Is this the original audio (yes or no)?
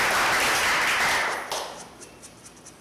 yes